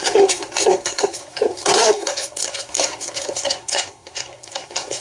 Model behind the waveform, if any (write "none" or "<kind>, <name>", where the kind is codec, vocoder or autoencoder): codec, SNAC